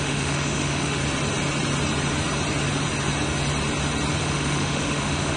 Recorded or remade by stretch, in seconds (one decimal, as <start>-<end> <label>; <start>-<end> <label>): 0.0-1.0 remade; 1.0-4.2 recorded; 4.2-5.4 remade